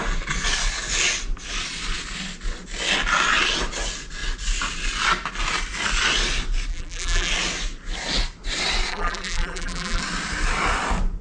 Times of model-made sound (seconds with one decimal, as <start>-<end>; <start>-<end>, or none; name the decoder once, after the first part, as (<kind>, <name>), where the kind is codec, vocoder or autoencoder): 6.7-7.3 (vocoder, BigVGAN v2); 8.9-10.0